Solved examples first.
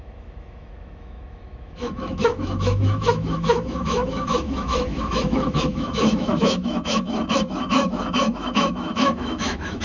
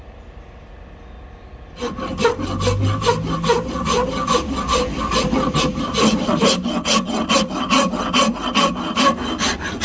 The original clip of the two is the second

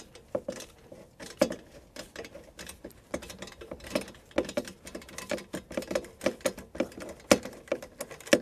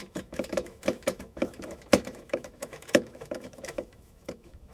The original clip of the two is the first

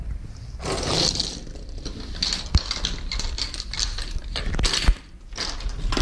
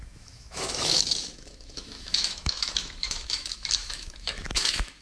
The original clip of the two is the first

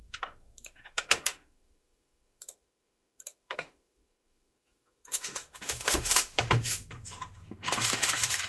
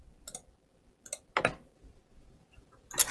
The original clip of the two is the second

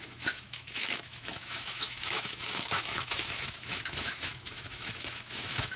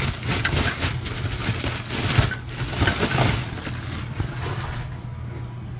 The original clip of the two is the second